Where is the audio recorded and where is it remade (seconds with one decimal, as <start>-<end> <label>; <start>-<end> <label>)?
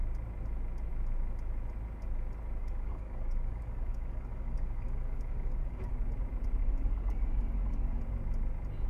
0.0-2.6 recorded; 2.6-5.9 remade; 5.9-6.6 recorded; 6.6-8.0 remade; 8.0-8.9 recorded